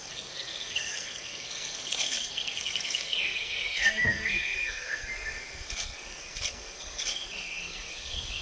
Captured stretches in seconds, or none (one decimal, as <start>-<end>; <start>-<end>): none